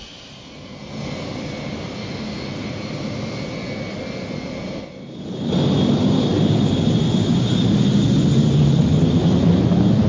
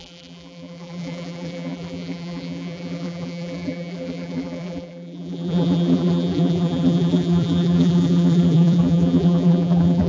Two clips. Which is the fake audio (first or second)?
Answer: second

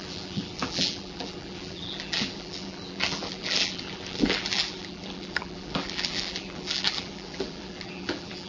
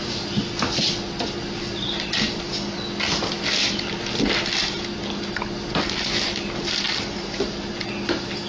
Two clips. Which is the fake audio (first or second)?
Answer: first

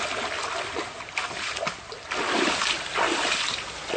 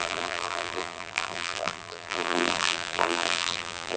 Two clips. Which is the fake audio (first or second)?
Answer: second